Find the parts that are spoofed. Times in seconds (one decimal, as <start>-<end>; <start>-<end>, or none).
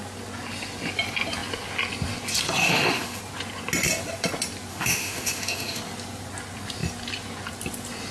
2.6-3.2; 4.7-5.8